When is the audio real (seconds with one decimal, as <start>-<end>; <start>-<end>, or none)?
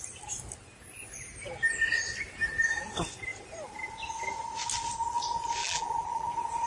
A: 0.0-5.6; 6.3-6.7